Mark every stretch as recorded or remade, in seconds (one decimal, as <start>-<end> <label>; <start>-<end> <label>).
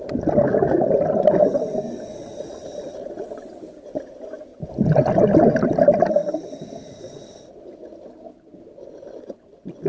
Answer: 0.0-9.9 recorded